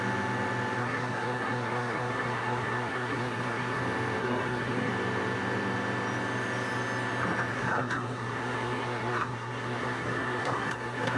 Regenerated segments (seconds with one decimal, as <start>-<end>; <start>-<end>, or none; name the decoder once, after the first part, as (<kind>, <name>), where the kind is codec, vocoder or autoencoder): 0.8-3.8 (codec, SNAC); 4.2-4.9; 7.5-11.2